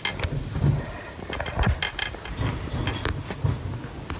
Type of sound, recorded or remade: recorded